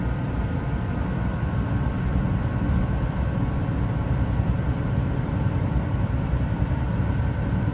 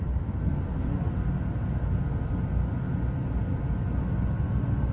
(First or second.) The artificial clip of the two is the first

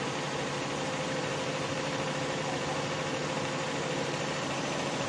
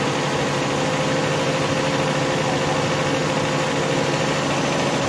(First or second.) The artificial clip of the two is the first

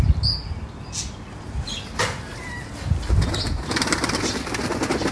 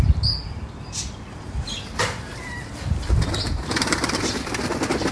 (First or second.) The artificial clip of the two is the second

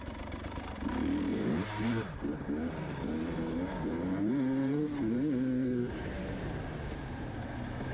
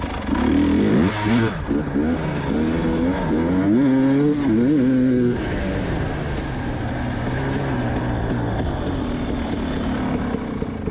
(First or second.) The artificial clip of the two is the first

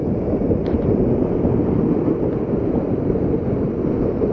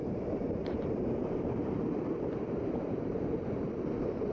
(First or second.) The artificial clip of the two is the second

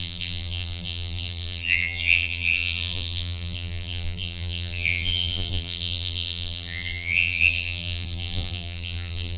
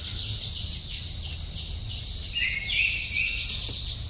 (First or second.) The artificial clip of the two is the first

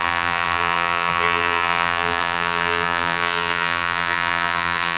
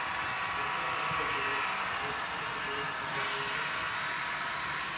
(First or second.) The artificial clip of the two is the first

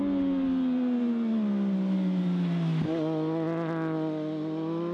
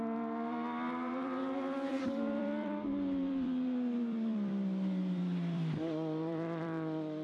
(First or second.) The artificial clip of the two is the second